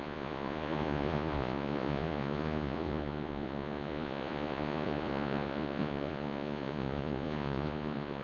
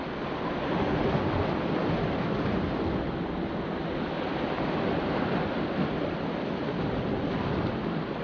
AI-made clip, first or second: first